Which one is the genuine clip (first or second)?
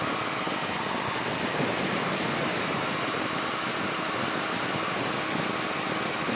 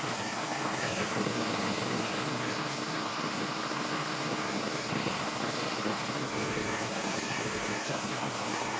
first